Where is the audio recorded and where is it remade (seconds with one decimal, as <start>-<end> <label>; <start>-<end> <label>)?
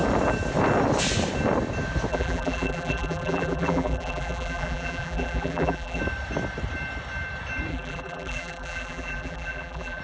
0.0-2.1 recorded; 2.1-6.0 remade; 6.0-7.7 recorded; 7.7-10.0 remade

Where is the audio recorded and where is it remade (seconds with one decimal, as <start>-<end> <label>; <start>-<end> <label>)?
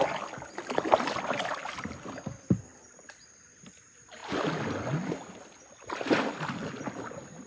0.0-7.5 recorded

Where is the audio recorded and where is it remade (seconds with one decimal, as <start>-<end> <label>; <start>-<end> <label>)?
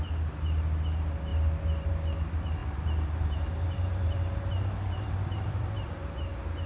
0.0-2.6 recorded; 2.6-6.3 remade; 6.3-6.7 recorded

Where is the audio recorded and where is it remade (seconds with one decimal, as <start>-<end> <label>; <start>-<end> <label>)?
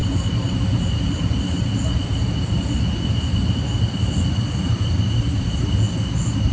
0.0-6.5 recorded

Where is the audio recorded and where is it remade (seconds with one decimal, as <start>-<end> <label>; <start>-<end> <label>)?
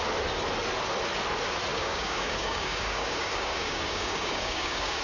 0.0-1.7 recorded; 1.7-5.0 remade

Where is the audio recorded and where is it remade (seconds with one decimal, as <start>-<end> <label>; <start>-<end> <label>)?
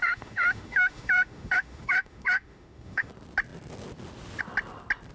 0.0-3.1 remade; 3.1-5.1 recorded